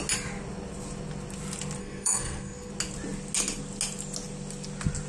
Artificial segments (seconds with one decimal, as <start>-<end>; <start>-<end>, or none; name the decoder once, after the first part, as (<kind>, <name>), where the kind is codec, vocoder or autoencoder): 1.8-2.7 (codec, SNAC)